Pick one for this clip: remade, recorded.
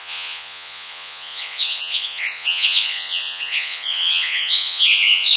remade